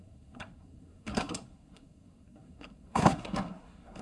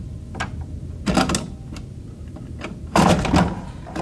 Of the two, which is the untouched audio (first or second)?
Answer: second